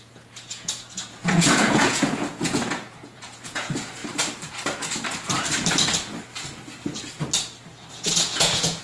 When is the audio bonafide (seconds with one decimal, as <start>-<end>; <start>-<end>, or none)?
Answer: 4.0-7.9